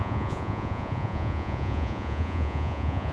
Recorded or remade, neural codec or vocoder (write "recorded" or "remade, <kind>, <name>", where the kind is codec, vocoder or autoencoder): remade, vocoder, Vocos